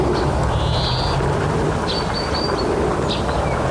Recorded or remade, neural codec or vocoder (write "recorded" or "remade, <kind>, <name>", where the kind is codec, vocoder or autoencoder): recorded